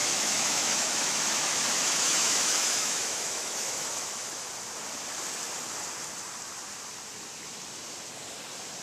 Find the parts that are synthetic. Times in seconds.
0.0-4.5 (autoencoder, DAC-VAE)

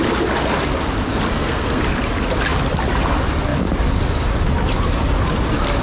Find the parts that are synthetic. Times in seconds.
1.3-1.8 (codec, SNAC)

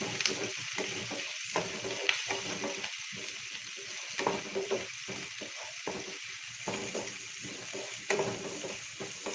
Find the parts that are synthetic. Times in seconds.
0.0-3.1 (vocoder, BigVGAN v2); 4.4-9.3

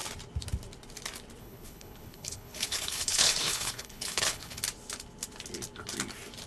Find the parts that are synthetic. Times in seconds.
1.4-4.6 (codec, HILCodec)

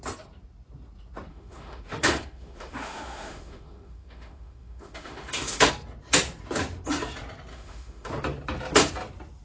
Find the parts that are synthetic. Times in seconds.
1.3-5.7 (autoencoder, DAC-VAE); 7.5-8.1

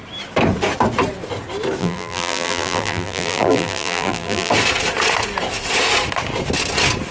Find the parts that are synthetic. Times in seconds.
1.8-4.5 (vocoder, BigVGAN v2)

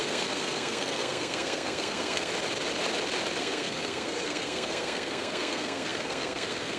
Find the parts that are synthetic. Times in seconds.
0.0-2.3 (codec, SNAC); 3.4-6.8

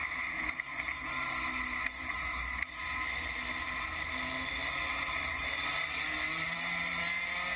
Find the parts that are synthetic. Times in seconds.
6.3-7.0 (vocoder, BigVGAN v2)